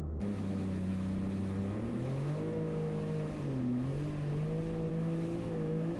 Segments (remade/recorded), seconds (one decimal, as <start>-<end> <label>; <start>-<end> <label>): 0.0-0.9 remade; 0.9-1.6 recorded; 1.6-3.9 remade; 3.9-4.9 recorded; 4.9-6.0 remade